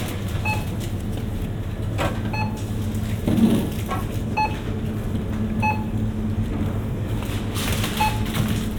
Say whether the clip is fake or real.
real